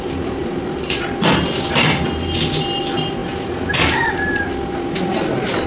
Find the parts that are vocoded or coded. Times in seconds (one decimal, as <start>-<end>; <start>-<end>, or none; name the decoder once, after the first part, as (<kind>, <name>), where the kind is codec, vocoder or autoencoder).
none

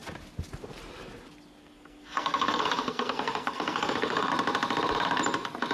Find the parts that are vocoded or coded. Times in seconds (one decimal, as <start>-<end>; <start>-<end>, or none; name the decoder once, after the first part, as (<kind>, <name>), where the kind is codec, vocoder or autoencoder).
1.6-4.3 (codec, SNAC)

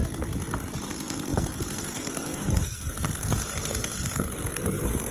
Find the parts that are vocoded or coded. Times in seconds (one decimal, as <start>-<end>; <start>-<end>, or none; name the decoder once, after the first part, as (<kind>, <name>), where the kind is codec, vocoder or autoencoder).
0.9-5.1 (codec, SNAC)

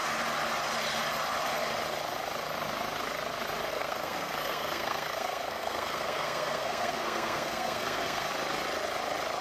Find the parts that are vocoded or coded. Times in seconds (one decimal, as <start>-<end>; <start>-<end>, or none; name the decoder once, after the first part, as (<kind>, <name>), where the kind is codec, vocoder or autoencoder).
3.7-8.3 (codec, SNAC)

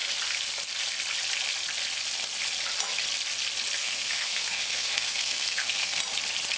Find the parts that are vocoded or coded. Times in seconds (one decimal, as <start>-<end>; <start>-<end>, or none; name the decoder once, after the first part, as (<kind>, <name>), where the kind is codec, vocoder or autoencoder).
3.8-6.0 (codec, SNAC)